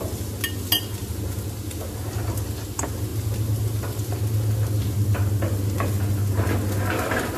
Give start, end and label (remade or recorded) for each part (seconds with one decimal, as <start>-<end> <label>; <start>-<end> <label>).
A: 0.0-7.4 recorded

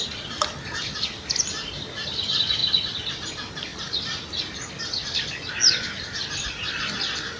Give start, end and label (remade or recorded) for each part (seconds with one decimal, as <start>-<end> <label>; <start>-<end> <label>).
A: 0.0-7.4 recorded

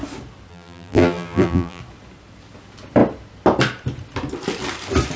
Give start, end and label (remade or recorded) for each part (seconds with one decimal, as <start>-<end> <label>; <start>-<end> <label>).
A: 0.0-0.5 recorded; 0.5-1.8 remade; 1.8-5.2 recorded

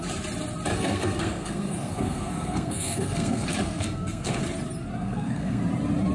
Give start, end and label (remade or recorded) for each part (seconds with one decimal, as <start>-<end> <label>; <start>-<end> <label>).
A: 0.0-0.7 recorded; 0.7-4.4 remade; 4.4-4.9 recorded; 4.9-5.6 remade; 5.6-6.1 recorded

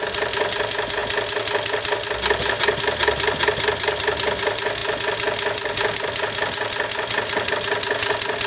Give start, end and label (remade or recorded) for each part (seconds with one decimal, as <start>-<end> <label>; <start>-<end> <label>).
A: 0.0-8.5 recorded